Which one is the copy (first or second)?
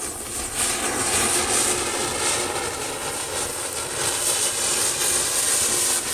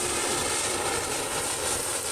second